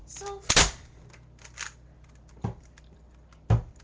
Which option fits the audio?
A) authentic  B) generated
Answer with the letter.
A